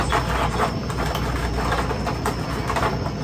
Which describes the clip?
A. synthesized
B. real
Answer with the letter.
B